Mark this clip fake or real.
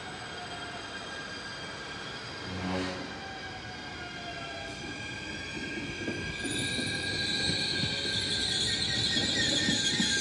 real